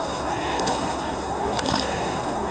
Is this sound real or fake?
fake